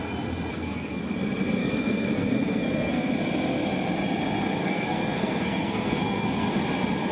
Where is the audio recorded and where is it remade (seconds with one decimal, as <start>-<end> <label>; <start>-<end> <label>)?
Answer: 0.0-0.5 recorded; 0.5-1.0 remade; 1.0-1.6 recorded; 1.6-3.1 remade; 3.1-4.6 recorded; 4.6-6.6 remade; 6.6-7.1 recorded